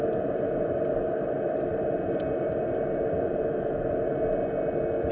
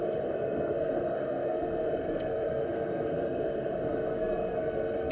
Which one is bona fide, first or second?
first